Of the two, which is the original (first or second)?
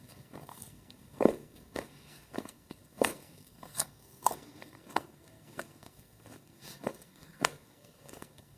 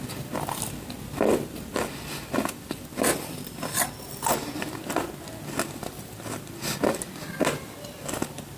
second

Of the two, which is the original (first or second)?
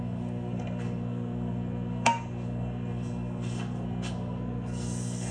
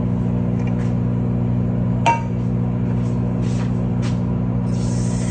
second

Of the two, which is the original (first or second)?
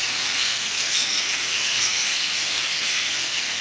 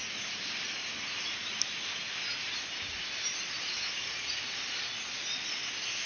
second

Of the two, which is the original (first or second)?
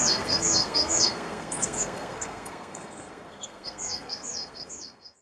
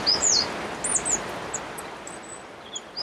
second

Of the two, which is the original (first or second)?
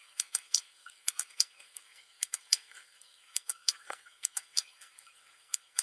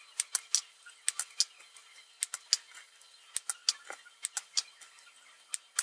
second